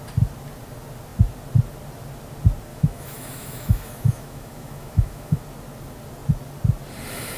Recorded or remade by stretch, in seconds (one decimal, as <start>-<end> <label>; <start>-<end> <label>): 0.0-2.7 recorded; 2.7-5.4 remade; 5.4-7.4 recorded

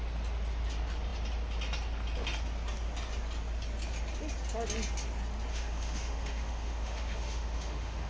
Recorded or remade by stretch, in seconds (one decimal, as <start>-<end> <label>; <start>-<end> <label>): 0.0-5.5 recorded; 5.5-8.1 remade

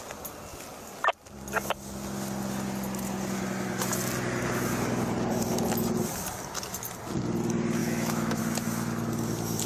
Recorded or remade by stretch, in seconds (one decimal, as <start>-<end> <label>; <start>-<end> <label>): 0.0-7.8 recorded; 7.8-8.4 remade; 8.4-9.7 recorded

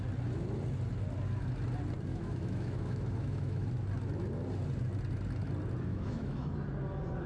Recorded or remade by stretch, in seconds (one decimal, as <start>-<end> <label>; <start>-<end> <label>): 0.0-2.1 recorded; 2.1-3.7 remade; 3.7-5.9 recorded; 5.9-6.5 remade; 6.5-7.3 recorded

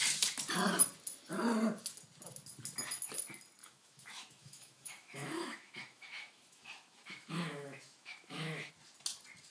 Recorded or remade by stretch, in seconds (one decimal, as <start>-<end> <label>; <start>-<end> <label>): 0.0-3.6 recorded; 3.6-8.7 remade; 8.7-9.5 recorded

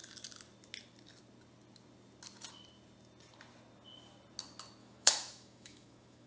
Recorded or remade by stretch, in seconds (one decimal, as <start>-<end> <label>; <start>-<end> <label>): 0.0-4.8 recorded; 4.8-6.3 remade

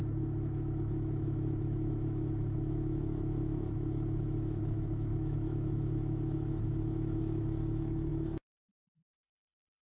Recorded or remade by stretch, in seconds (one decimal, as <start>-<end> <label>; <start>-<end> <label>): 0.0-9.8 remade

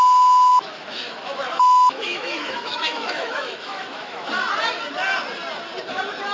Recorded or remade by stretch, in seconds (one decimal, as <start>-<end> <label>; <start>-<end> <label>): 0.0-0.5 recorded; 0.5-4.3 remade; 4.3-6.3 recorded